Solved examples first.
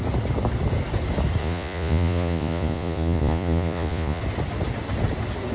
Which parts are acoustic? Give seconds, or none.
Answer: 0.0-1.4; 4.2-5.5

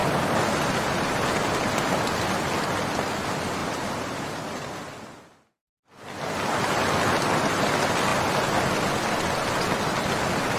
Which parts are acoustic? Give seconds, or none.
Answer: 0.0-10.6

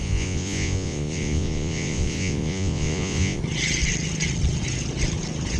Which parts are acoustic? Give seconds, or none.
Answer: 3.4-5.6

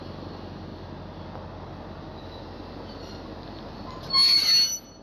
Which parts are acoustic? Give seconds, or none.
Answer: 0.0-5.0

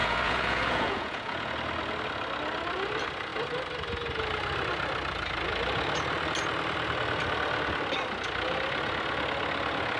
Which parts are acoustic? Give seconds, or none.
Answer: 1.5-10.0